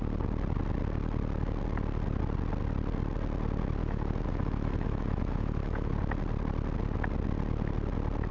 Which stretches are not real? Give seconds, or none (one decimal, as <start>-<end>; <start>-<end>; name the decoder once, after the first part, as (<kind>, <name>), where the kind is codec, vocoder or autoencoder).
3.8-5.9 (autoencoder, DAC-VAE)